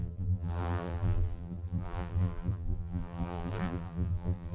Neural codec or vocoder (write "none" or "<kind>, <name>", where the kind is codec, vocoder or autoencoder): vocoder, BigVGAN v2